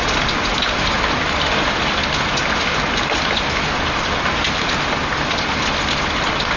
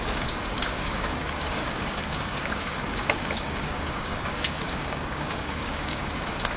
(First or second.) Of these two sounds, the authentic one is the first